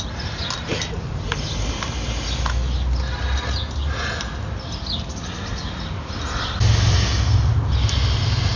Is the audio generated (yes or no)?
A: no